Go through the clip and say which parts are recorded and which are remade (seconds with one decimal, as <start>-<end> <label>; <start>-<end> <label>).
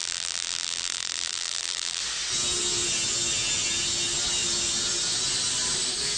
0.0-2.0 remade; 2.0-6.2 recorded